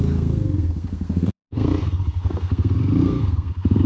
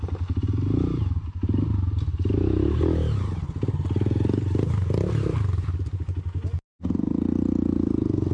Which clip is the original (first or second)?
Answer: second